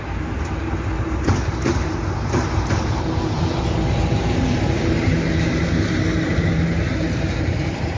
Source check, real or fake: fake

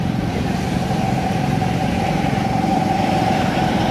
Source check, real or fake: fake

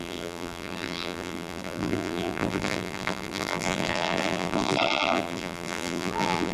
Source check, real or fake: fake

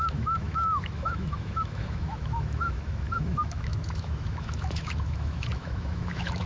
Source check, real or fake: fake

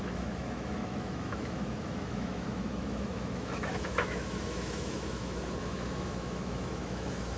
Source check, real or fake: fake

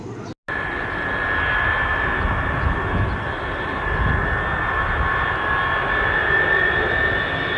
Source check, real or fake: real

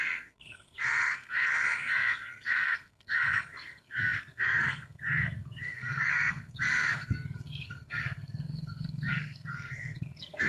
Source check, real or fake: fake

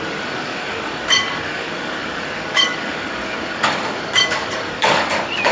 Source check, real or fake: fake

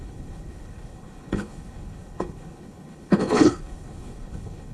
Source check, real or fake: fake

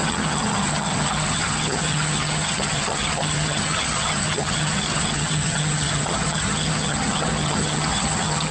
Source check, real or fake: fake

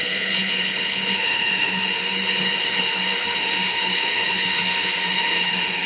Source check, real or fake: fake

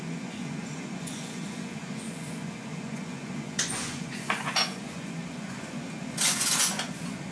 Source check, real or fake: fake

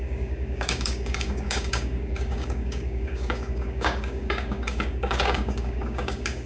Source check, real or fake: fake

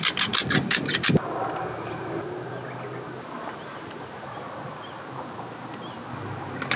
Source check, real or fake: real